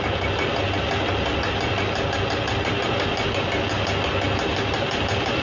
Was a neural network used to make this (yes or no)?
no